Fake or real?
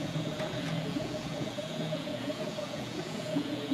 fake